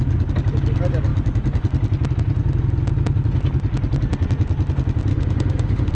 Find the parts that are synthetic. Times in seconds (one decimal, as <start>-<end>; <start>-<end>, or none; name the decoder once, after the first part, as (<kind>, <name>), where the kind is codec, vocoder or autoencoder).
5.1-5.9 (autoencoder, DAC-VAE)